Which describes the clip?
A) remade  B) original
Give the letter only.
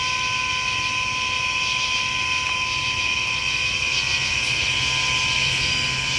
B